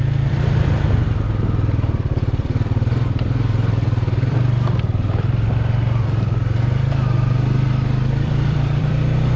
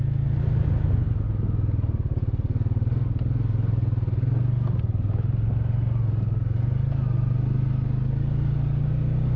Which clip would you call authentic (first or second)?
second